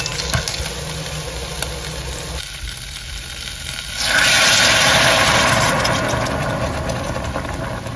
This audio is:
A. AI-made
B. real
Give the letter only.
B